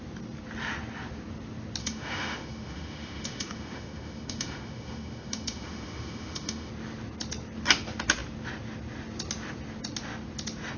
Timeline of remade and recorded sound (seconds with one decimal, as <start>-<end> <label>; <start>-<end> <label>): 0.0-1.8 recorded; 1.8-6.7 remade; 6.7-10.8 recorded